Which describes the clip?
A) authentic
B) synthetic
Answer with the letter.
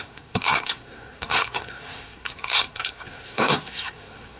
B